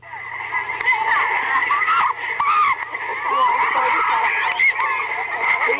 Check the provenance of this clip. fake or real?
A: real